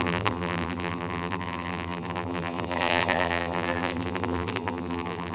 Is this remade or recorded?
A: remade